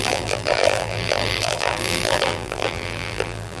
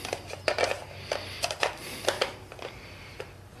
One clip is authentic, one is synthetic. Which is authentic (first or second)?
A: second